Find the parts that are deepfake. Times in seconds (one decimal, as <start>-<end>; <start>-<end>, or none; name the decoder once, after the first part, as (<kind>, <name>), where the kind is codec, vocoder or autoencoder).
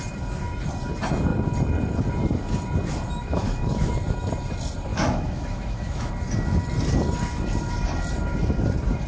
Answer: 3.2-3.9 (autoencoder, DAC-VAE); 4.9-6.1